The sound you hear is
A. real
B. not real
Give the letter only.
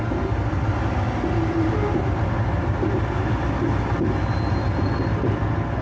A